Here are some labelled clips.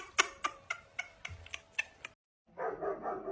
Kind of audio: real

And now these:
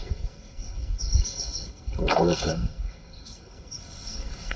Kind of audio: fake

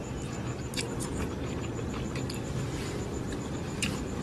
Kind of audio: real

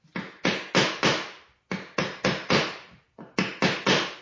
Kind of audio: real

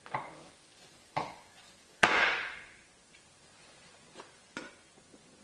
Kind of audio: fake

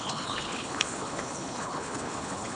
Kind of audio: fake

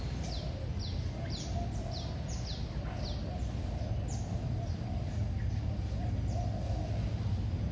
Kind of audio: real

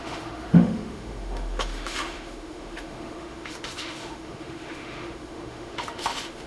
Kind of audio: fake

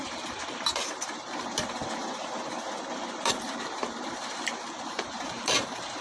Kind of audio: fake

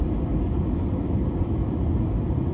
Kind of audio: real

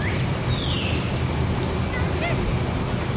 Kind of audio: real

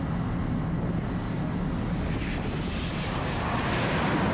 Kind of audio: real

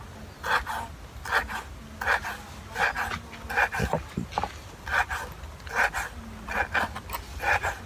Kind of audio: real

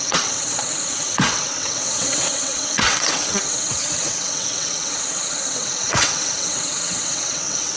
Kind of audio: fake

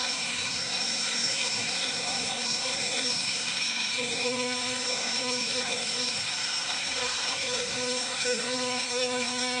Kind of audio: fake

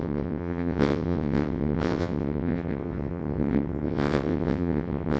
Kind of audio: fake